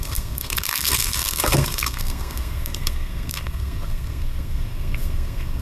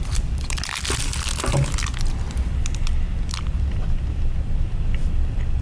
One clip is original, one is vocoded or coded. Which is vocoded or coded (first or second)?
first